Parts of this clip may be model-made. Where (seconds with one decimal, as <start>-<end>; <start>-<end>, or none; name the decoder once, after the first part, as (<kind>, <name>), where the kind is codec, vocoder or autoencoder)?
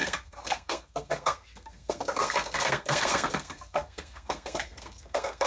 0.0-5.5 (codec, SNAC)